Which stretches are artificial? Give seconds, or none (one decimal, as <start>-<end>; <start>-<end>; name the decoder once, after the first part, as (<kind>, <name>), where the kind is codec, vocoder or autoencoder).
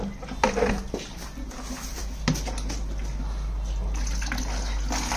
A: none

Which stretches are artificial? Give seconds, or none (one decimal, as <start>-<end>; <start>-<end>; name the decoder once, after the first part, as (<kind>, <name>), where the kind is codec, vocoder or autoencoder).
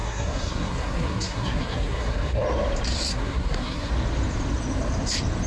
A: 0.0-2.4 (codec, SNAC); 3.1-3.9